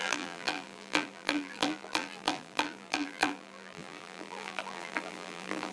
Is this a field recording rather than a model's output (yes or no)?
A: no